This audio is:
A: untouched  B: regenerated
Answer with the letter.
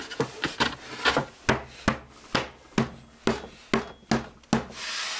A